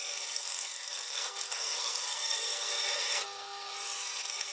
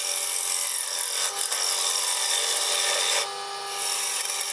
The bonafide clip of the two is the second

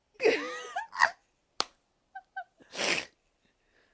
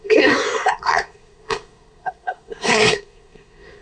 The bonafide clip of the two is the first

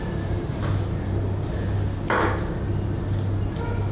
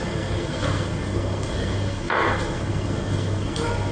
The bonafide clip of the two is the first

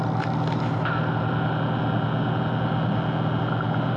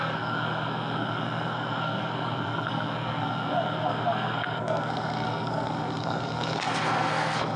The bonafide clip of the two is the first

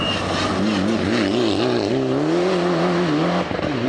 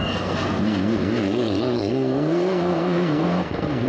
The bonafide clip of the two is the first